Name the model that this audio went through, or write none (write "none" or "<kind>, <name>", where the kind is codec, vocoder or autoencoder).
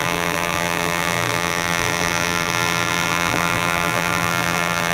vocoder, BigVGAN v2